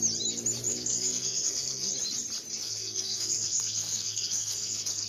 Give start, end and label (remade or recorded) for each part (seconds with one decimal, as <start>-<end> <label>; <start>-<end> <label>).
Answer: 0.0-0.7 recorded; 0.7-1.9 remade; 1.9-2.6 recorded; 2.6-5.1 remade